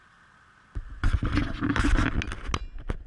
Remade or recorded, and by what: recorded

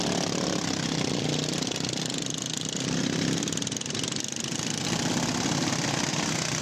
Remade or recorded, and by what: recorded